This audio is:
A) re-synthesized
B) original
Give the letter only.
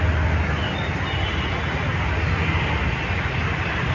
B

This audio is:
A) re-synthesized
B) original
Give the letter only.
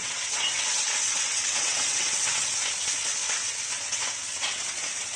A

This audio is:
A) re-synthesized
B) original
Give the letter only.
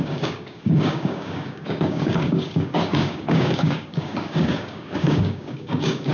A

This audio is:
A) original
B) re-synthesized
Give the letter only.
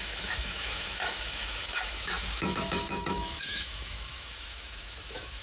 B